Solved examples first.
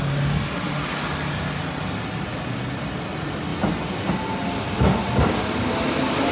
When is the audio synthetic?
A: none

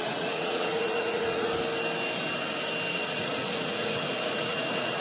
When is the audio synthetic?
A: 0.0-1.5; 2.9-5.0

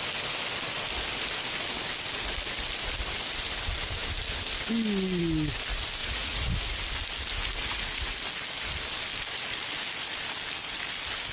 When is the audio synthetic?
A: 6.0-6.5; 7.7-8.2

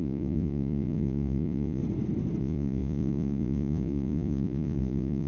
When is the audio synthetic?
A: 0.0-1.8; 2.4-5.3